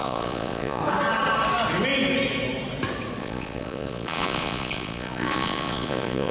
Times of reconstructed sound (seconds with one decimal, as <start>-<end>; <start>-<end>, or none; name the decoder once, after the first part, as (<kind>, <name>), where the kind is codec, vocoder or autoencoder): 0.0-0.8 (vocoder, Vocos); 3.2-6.3